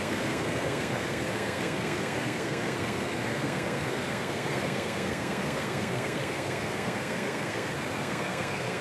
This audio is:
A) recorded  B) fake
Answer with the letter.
B